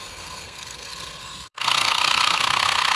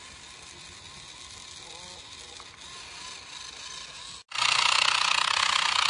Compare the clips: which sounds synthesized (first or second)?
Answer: first